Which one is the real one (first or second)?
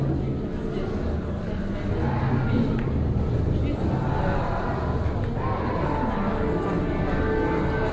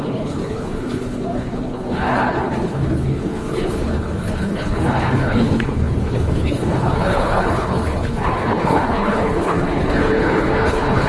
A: first